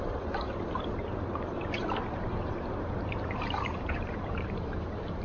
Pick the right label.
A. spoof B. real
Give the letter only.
A